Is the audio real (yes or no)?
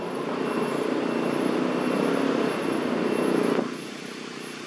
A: yes